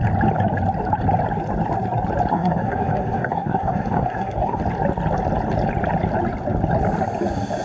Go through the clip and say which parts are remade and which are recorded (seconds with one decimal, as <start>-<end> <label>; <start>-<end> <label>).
0.0-2.3 recorded; 2.3-4.6 remade; 4.6-7.6 recorded